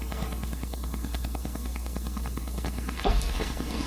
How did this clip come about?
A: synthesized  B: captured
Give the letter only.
A